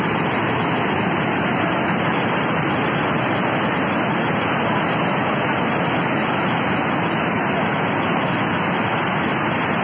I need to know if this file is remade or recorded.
recorded